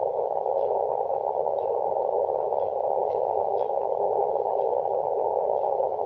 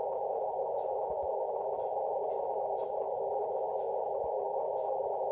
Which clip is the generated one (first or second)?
first